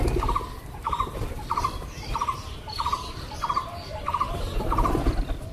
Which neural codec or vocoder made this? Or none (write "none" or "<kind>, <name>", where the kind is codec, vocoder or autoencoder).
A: none